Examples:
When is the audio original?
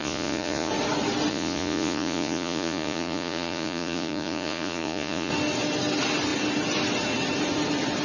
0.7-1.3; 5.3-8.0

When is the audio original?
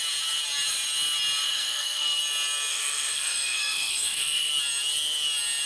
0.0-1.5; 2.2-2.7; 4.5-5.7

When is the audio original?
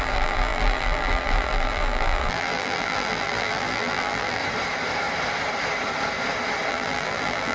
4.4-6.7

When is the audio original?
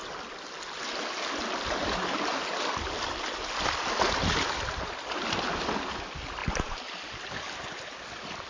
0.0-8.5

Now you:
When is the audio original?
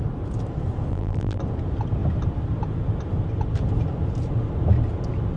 0.0-0.9; 1.4-5.4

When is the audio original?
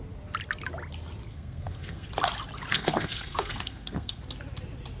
0.0-1.3; 2.1-2.7; 4.2-5.0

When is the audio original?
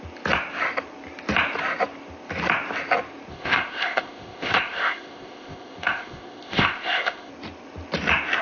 0.0-3.3; 7.3-8.4